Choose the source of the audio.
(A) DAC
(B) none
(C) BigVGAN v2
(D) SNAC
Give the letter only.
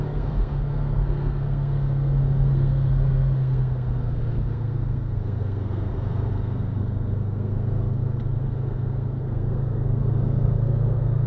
D